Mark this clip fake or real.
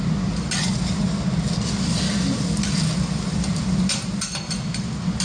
real